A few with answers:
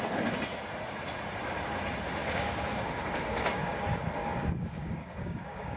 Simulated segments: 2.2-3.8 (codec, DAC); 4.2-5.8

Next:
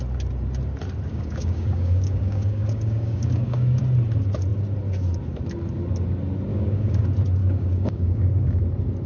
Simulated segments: 1.1-3.8 (codec, DAC); 6.5-7.0; 7.4-8.6

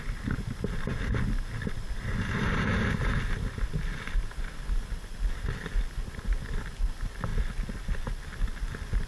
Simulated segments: none

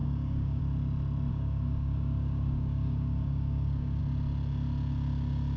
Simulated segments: 0.0-0.6 (codec, DAC); 1.3-4.0

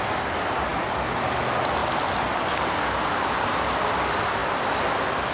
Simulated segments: none

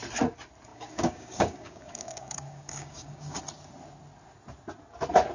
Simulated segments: 0.7-3.4 (codec, DAC)

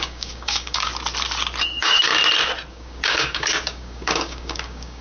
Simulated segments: 0.0-0.9 (codec, DAC); 1.6-2.1; 2.7-5.0